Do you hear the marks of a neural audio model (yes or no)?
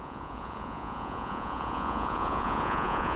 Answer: yes